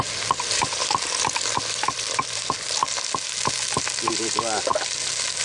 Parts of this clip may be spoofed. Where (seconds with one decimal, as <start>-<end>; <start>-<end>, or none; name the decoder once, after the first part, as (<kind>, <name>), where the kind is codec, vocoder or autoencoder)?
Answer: none